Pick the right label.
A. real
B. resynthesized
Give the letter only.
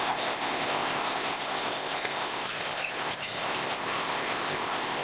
B